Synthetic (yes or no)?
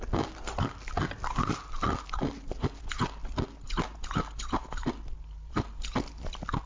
no